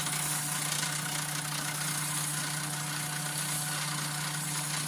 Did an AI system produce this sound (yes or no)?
no